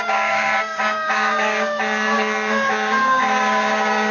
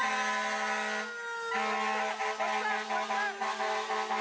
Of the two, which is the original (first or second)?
second